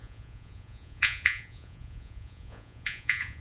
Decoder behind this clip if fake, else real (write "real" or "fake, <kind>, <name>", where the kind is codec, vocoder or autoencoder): fake, vocoder, Vocos